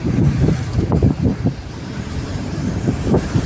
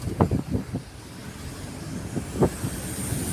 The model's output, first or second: first